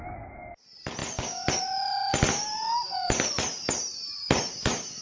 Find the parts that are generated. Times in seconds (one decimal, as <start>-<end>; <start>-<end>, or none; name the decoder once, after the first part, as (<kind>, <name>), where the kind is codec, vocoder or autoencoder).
none